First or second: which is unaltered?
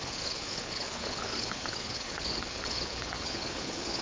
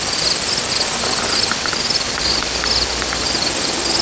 second